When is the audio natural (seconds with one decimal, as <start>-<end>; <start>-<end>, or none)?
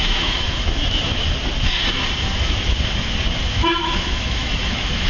1.2-3.5